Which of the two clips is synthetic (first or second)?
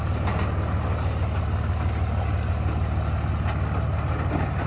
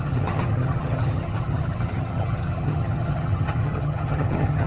second